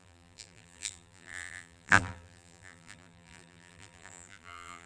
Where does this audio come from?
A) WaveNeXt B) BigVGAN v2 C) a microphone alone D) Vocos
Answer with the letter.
B